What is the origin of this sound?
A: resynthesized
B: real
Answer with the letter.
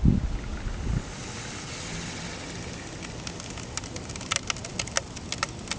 B